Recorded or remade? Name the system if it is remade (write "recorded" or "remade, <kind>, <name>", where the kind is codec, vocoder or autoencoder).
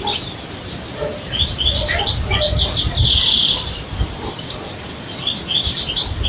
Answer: remade, vocoder, BigVGAN v2